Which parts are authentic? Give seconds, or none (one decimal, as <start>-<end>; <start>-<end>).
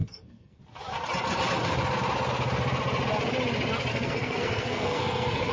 0.6-3.9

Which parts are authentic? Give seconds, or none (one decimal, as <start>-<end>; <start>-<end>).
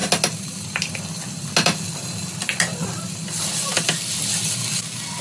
0.0-5.2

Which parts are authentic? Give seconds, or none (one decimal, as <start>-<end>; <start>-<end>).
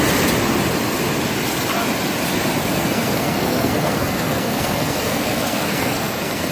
0.0-2.6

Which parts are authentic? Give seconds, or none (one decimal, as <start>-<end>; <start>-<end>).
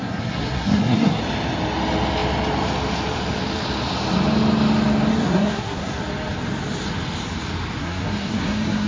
1.2-5.1; 6.0-7.8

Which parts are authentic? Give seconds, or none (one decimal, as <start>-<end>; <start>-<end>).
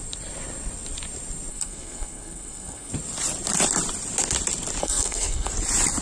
0.0-1.5; 2.9-4.8; 5.5-6.0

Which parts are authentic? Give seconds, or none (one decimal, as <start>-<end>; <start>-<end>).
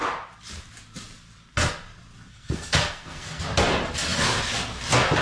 0.0-2.3; 3.4-5.2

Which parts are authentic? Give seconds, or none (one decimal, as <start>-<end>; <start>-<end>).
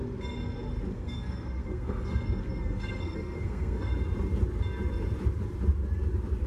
0.0-0.9; 3.9-6.5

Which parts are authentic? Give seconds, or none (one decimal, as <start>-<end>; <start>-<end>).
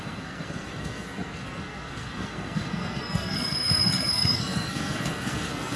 none